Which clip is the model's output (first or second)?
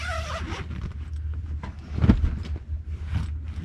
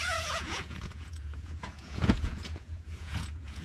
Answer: second